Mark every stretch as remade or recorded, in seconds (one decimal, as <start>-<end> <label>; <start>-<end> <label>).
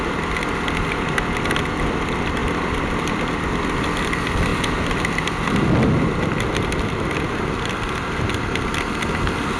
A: 0.0-4.5 remade; 4.5-9.6 recorded